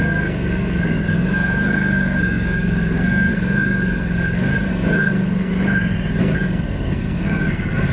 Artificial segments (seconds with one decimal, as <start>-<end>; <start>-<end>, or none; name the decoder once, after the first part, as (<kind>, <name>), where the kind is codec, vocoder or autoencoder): 0.0-5.5 (codec, SNAC); 6.2-7.9